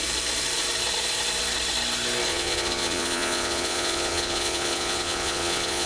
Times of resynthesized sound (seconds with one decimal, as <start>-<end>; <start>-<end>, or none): 2.3-5.9